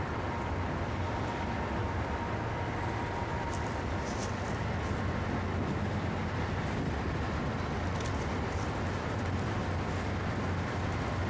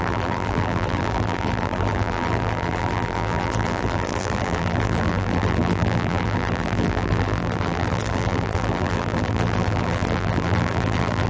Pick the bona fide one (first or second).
first